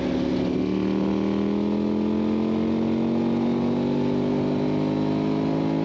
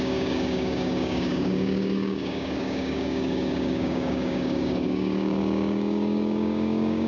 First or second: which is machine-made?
second